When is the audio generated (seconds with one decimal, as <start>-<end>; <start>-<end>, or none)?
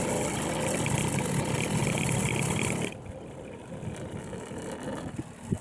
none